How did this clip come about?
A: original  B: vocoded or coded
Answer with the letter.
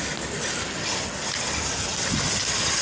A